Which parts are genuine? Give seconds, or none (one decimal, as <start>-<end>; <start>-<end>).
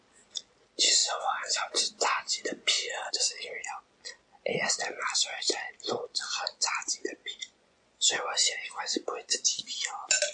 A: 0.0-1.0; 3.1-7.2; 8.8-10.3